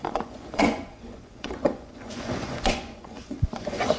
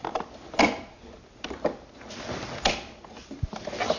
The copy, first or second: first